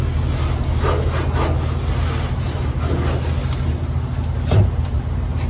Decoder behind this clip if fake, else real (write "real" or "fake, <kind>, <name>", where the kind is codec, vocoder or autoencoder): real